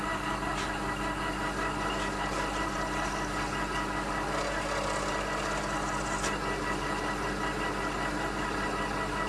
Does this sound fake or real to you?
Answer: real